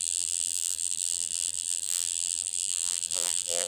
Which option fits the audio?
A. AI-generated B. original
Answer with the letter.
A